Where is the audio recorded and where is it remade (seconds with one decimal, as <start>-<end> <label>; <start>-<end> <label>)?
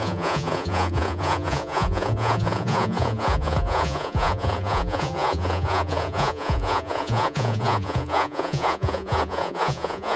0.0-10.2 remade